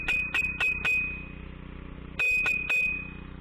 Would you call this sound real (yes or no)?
yes